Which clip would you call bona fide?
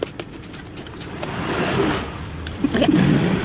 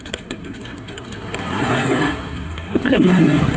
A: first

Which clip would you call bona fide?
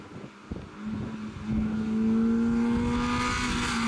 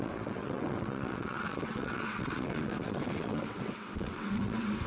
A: first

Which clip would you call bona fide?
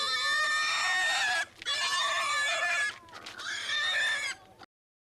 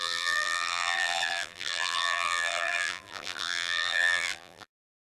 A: first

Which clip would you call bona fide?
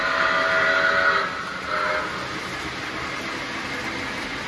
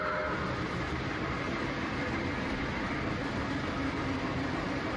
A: first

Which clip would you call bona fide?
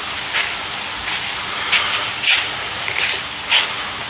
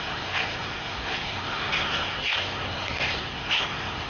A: first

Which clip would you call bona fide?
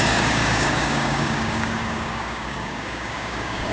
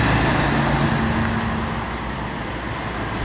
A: second